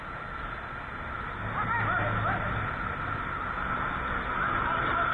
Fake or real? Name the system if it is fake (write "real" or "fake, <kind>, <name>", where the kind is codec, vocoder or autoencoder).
real